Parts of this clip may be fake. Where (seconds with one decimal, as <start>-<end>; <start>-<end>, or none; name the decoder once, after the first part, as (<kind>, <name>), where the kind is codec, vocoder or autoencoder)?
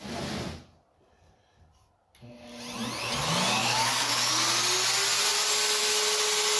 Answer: 3.6-4.3 (codec, DAC)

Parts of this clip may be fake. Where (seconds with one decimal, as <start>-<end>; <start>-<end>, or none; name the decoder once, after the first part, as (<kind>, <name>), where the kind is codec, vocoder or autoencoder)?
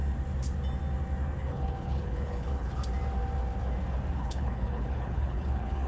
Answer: 1.4-2.8 (codec, HILCodec); 4.1-5.9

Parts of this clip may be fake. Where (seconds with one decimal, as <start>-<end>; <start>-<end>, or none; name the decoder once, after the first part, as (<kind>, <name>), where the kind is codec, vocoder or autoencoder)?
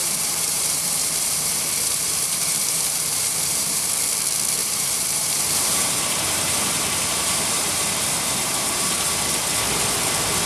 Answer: 0.0-3.9 (vocoder, BigVGAN v2); 4.6-9.2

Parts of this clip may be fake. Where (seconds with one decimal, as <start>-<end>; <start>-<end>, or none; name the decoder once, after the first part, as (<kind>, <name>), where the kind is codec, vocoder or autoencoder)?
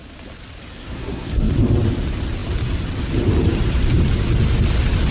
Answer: 0.8-1.5 (codec, SNAC)